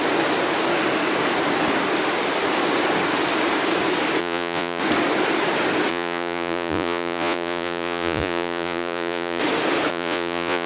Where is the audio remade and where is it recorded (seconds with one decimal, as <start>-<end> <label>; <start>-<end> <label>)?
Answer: 0.0-4.2 recorded; 4.2-4.8 remade; 4.8-5.9 recorded; 5.9-9.4 remade; 9.4-9.9 recorded; 9.9-10.7 remade